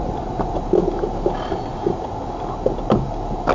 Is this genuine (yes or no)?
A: yes